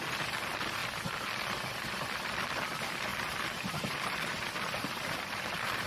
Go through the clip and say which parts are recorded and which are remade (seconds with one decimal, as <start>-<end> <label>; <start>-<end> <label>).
0.0-0.8 remade; 0.8-1.7 recorded; 1.7-5.9 remade

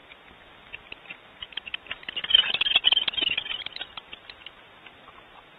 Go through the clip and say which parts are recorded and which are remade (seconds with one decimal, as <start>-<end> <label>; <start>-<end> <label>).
0.0-5.6 recorded

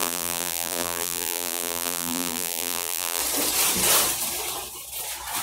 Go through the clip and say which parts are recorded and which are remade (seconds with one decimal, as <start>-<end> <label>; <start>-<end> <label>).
0.0-3.2 remade; 3.2-5.4 recorded

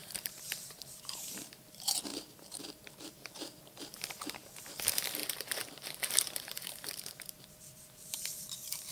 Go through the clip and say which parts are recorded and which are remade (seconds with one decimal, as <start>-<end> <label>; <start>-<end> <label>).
0.0-8.9 remade

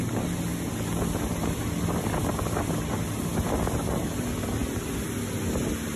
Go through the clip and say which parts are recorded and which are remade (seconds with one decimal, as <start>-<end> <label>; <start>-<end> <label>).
0.0-6.0 recorded